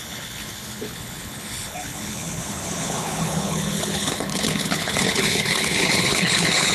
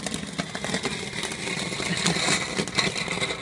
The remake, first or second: first